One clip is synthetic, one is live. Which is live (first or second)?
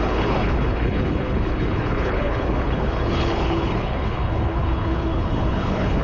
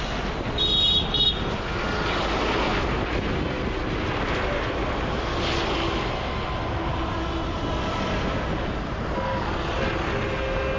second